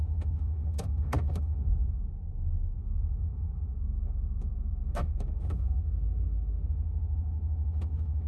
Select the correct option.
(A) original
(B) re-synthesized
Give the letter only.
B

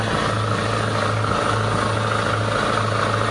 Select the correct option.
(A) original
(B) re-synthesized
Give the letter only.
A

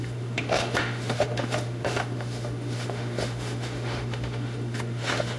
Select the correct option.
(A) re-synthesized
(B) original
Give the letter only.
A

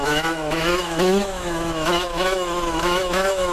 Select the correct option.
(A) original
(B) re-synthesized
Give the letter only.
B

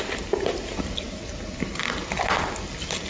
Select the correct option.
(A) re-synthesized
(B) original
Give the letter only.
B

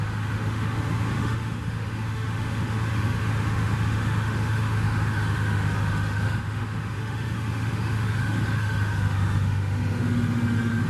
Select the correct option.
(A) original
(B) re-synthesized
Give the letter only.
B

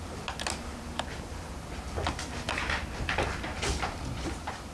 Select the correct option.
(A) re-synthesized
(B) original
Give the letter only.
B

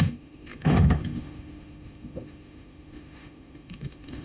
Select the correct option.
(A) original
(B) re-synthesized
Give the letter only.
B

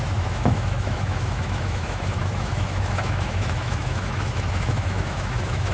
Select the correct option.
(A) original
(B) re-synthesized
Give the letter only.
B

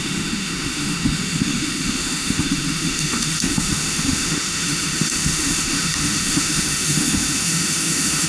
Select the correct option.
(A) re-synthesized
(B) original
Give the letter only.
A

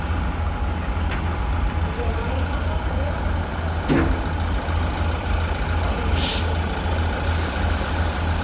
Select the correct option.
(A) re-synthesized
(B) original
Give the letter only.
B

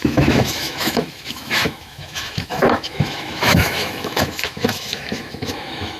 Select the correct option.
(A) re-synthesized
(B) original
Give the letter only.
A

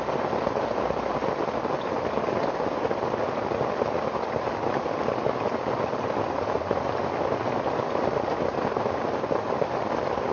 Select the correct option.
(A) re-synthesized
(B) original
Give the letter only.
B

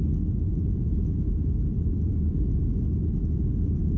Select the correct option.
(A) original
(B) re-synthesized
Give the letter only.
A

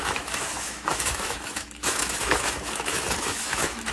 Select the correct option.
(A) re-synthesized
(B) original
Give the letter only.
A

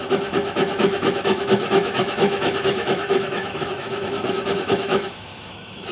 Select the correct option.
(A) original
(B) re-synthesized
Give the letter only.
B